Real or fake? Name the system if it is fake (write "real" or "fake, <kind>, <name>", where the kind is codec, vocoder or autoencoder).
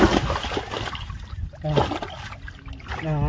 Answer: real